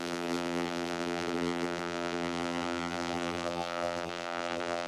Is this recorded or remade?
remade